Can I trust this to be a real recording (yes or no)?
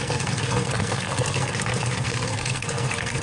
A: no